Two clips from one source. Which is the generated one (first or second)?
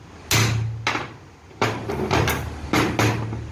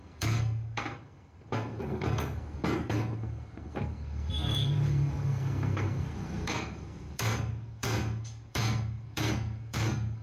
second